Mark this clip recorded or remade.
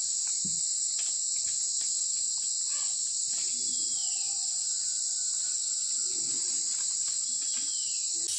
recorded